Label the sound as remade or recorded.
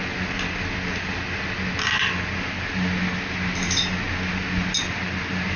recorded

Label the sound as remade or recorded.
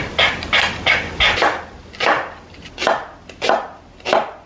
recorded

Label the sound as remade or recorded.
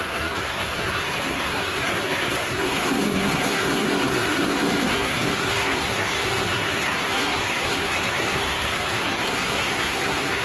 remade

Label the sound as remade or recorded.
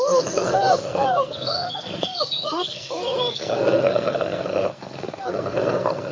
remade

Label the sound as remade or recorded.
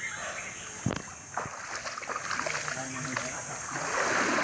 recorded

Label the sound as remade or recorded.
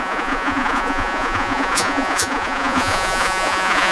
remade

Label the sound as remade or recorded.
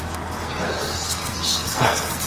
remade